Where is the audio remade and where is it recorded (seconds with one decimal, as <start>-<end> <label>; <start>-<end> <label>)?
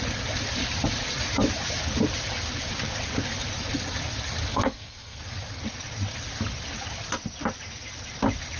0.0-4.5 recorded; 4.5-5.2 remade; 5.2-8.6 recorded